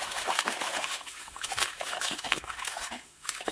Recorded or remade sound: remade